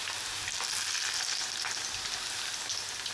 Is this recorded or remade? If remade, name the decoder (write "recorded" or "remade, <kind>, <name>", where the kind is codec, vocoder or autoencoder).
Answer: recorded